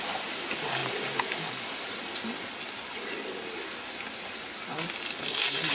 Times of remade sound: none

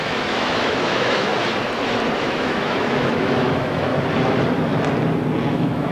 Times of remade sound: 0.0-1.3 (autoencoder, DAC-VAE); 2.2-3.9; 5.5-5.9

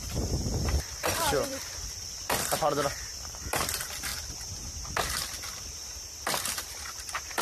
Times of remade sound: 0.0-4.1 (vocoder, BigVGAN v2); 5.0-7.4

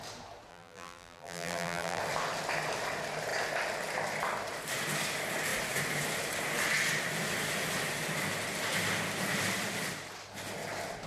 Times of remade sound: 0.5-2.0 (vocoder, BigVGAN v2)

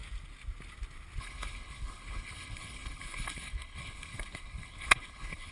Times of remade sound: 1.2-5.5 (codec, HILCodec)